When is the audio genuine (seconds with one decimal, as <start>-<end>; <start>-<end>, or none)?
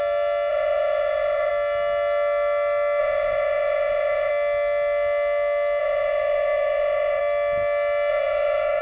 0.0-0.5; 1.5-3.0; 4.3-5.8; 7.2-8.1